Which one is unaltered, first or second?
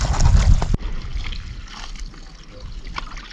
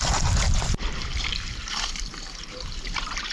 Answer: first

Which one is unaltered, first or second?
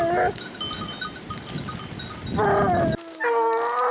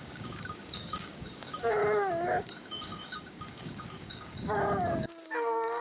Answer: first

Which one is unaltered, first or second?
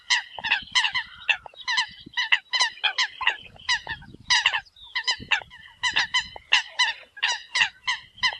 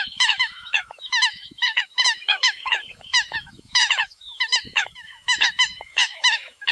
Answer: first